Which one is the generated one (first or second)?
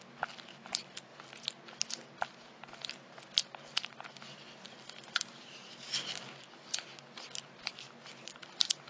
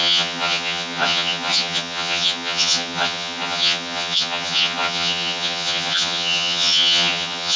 second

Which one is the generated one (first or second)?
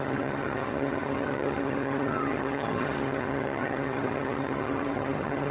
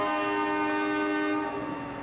first